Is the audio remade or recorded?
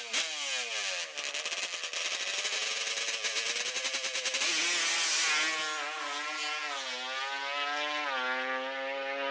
recorded